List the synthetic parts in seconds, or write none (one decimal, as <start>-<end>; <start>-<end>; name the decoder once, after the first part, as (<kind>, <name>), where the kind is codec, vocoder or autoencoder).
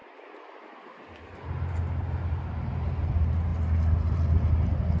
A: none